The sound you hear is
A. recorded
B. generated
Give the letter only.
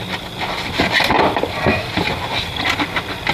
A